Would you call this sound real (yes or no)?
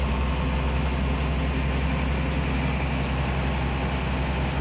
yes